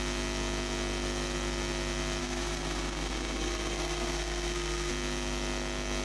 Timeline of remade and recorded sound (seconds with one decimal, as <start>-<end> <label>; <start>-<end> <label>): 0.0-2.2 recorded; 2.2-4.9 remade; 4.9-6.0 recorded